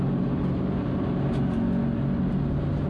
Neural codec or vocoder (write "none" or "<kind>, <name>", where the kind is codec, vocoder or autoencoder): none